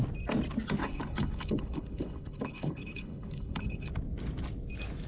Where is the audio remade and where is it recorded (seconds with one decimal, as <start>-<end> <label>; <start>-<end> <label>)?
0.0-0.8 recorded; 0.8-3.9 remade; 3.9-5.1 recorded